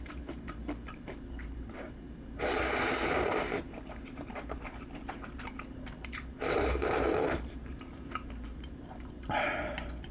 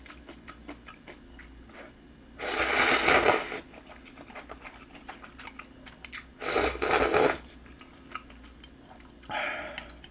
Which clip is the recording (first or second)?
second